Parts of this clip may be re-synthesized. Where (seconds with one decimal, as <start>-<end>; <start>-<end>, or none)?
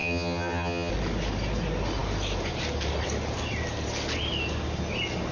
0.0-0.9